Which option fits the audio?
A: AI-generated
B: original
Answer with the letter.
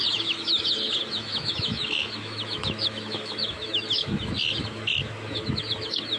A